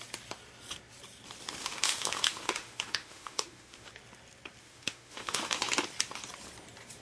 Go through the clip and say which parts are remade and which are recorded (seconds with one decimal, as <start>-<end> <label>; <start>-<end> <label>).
0.0-1.6 recorded; 1.6-3.9 remade; 3.9-4.6 recorded; 4.6-5.6 remade; 5.6-7.0 recorded